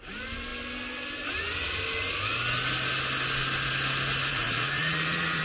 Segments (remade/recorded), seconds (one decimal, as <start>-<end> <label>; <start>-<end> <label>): 0.0-4.3 recorded; 4.3-5.4 remade